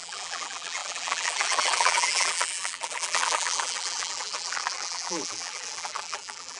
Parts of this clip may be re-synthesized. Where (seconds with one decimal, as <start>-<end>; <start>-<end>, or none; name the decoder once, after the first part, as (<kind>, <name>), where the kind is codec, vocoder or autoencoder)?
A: 0.0-6.6 (vocoder, BigVGAN v2)